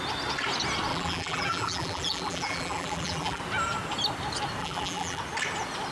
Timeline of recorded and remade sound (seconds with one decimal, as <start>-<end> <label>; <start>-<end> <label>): 0.0-0.9 recorded; 0.9-3.4 remade; 3.4-4.6 recorded; 4.6-5.2 remade; 5.2-5.9 recorded